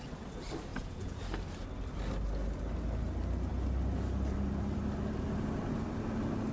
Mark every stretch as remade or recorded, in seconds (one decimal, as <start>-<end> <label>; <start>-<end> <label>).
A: 0.0-0.7 recorded; 0.7-1.2 remade; 1.2-6.5 recorded